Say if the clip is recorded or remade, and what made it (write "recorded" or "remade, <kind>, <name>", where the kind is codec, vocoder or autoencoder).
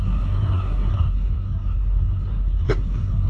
remade, codec, SNAC